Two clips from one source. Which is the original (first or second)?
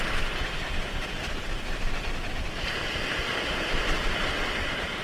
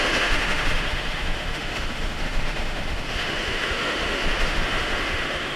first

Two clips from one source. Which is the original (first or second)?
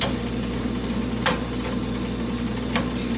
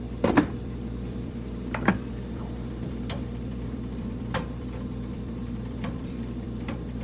first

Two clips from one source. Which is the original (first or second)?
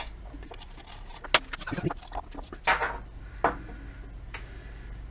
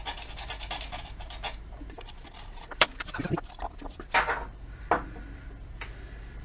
first